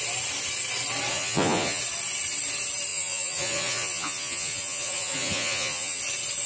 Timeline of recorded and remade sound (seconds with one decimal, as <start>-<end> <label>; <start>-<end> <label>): 0.0-1.1 recorded; 1.1-1.8 remade; 1.8-2.9 recorded; 2.9-6.0 remade; 6.0-6.5 recorded